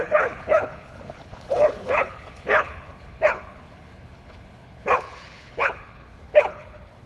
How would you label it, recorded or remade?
remade